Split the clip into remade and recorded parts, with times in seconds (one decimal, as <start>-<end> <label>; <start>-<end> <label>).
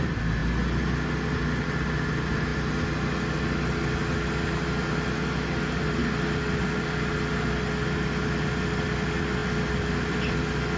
0.0-10.8 recorded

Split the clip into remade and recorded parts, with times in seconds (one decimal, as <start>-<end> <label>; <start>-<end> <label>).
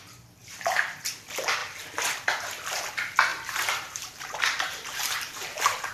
0.0-0.4 recorded; 0.4-1.2 remade; 1.2-3.3 recorded; 3.3-5.9 remade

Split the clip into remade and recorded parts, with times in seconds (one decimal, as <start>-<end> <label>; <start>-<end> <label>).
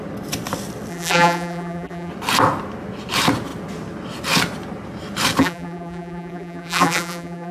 0.0-0.9 recorded; 0.9-2.1 remade; 2.1-5.4 recorded; 5.4-7.5 remade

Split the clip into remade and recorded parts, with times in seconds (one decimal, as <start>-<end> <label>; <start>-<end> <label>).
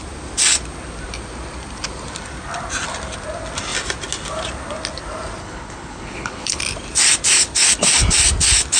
0.0-5.4 recorded; 5.4-6.6 remade; 6.6-8.8 recorded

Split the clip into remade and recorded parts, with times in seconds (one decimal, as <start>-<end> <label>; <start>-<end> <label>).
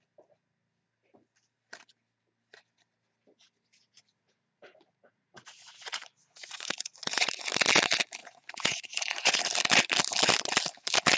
0.0-3.8 recorded; 3.8-7.3 remade; 7.3-8.2 recorded; 8.2-9.4 remade; 9.4-11.2 recorded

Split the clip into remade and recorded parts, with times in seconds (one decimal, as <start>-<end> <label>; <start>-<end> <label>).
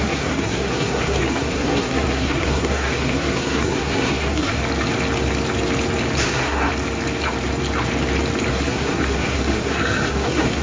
0.0-4.6 remade; 4.6-6.2 recorded; 6.2-6.7 remade; 6.7-8.5 recorded; 8.5-10.6 remade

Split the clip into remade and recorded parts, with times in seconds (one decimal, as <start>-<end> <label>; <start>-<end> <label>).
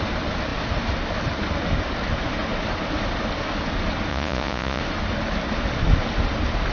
0.0-4.1 recorded; 4.1-4.8 remade; 4.8-6.7 recorded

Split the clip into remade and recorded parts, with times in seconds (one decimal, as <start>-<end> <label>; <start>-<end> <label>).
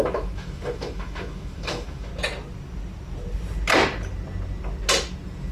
0.0-2.1 remade; 2.1-5.5 recorded